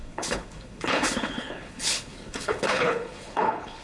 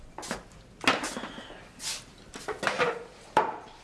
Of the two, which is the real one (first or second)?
second